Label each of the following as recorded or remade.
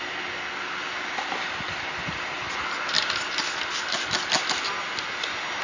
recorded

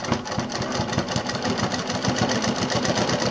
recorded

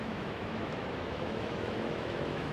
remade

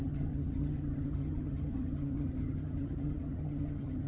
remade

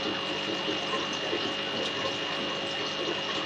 recorded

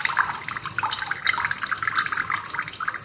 recorded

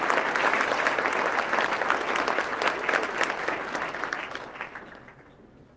recorded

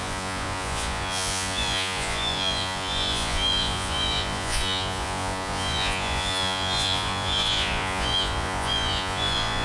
remade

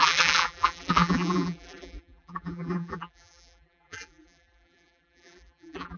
remade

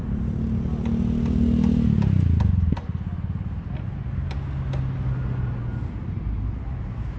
recorded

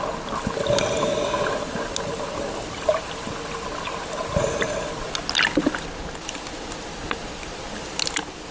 recorded